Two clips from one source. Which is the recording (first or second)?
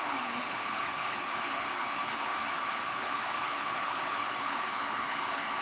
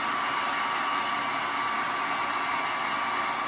second